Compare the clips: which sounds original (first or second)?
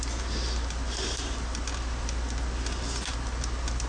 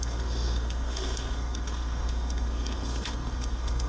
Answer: first